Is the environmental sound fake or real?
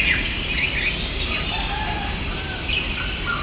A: real